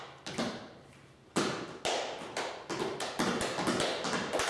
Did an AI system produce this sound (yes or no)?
no